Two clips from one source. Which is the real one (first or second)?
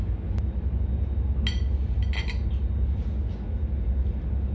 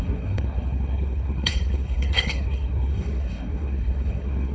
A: first